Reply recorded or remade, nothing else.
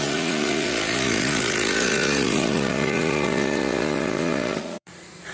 remade